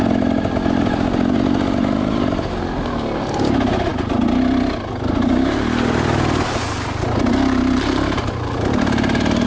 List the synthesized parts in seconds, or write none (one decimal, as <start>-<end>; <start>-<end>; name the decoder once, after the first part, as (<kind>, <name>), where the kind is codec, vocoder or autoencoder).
none